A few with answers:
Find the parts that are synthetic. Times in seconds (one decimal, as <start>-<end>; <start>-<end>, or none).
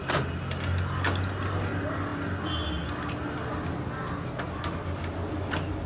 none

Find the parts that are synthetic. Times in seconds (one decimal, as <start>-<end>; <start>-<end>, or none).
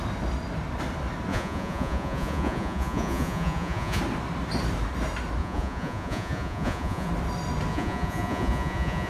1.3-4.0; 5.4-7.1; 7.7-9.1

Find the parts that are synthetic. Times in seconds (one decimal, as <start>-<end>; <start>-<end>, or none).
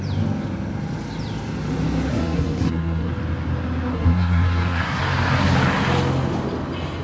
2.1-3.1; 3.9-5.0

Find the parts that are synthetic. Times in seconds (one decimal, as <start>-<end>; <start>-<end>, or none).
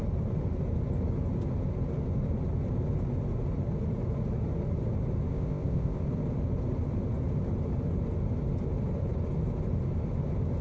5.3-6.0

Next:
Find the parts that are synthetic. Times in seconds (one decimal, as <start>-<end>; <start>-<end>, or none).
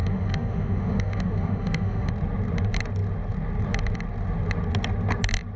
0.0-2.1